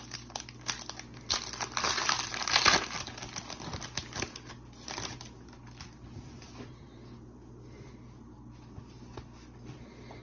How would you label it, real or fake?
real